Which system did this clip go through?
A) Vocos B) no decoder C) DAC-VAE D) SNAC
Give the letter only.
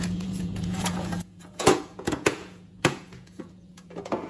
A